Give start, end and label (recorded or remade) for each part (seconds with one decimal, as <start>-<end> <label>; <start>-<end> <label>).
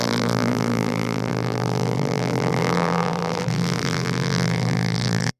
0.0-5.4 remade